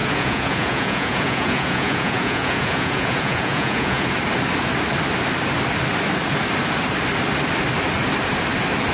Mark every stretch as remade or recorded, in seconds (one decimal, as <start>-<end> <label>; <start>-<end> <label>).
0.0-4.1 remade; 4.1-8.9 recorded